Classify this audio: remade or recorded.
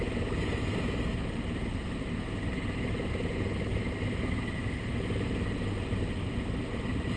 recorded